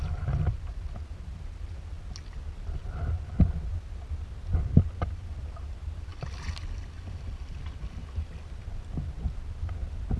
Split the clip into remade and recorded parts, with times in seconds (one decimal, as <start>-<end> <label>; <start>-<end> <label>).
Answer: 0.0-10.2 recorded